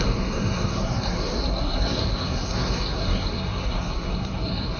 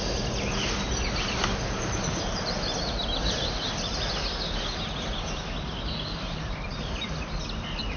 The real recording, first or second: second